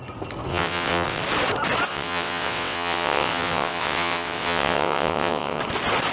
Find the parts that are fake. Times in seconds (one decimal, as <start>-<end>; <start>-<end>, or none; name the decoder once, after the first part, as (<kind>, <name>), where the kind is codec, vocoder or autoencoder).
0.5-1.2 (vocoder, WaveNeXt); 1.9-5.6